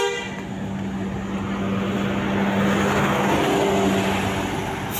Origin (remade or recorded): recorded